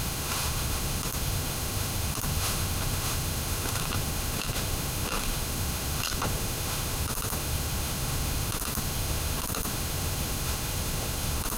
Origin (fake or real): fake